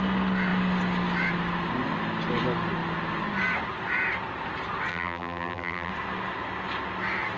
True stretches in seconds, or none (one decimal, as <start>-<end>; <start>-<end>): 0.0-4.9; 5.9-7.4